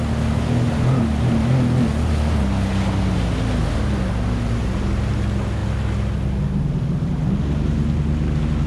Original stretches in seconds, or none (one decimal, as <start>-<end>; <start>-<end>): 0.0-8.7